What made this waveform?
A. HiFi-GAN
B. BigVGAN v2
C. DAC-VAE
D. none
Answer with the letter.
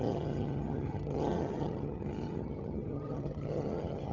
A